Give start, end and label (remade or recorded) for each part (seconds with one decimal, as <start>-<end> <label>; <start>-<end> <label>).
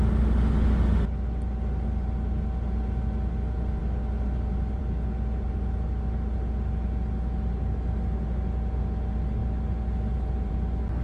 0.0-11.0 recorded